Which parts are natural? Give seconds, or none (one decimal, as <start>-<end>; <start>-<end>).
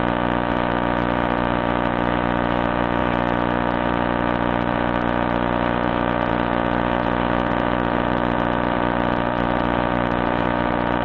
none